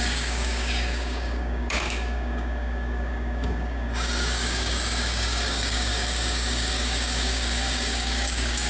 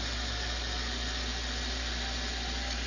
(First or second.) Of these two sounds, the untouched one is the second